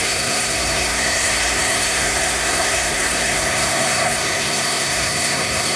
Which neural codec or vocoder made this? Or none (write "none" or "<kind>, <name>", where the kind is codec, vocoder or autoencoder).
codec, SNAC